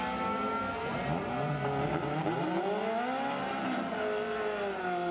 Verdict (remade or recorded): recorded